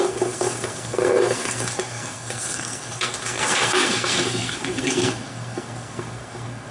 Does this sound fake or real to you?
fake